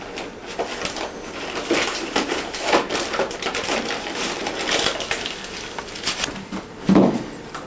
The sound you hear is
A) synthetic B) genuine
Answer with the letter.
B